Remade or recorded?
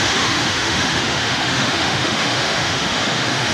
remade